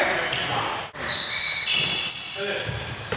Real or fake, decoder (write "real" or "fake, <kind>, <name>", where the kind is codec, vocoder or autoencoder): real